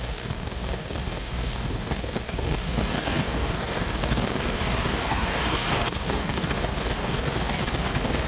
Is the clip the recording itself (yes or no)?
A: no